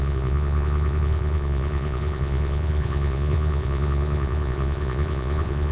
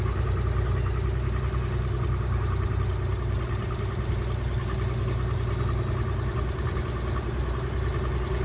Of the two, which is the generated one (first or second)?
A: first